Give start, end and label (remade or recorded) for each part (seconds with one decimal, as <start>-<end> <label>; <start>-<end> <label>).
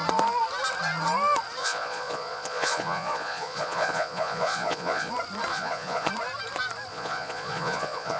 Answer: 0.0-1.6 recorded; 1.6-5.1 remade; 5.1-5.5 recorded; 5.5-6.1 remade; 6.1-6.9 recorded; 6.9-8.2 remade